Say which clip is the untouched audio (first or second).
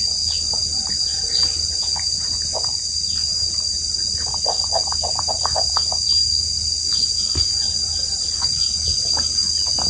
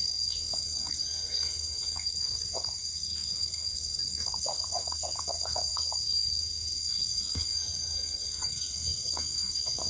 first